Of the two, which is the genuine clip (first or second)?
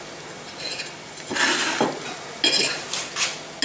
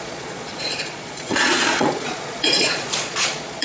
first